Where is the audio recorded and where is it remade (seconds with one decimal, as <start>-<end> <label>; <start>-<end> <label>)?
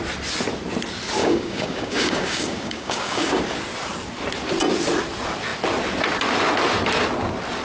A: 0.0-1.2 recorded; 1.2-3.4 remade; 3.4-7.6 recorded